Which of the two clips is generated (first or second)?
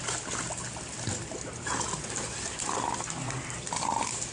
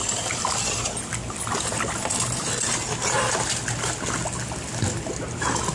first